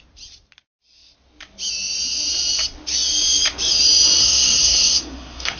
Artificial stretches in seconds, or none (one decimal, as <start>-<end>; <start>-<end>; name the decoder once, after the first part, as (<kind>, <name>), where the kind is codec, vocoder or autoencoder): 4.2-5.6 (codec, SNAC)